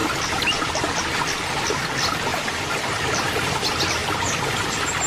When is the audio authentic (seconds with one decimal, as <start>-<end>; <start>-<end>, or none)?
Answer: 1.0-2.3; 3.2-5.1